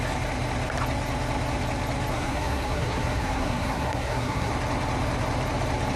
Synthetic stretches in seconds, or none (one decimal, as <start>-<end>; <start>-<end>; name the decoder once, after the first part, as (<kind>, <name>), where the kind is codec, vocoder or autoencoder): 2.1-4.5 (codec, SNAC)